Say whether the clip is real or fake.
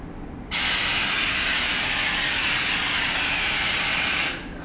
real